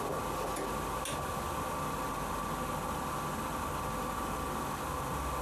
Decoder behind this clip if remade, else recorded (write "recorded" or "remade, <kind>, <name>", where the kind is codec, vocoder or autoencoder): recorded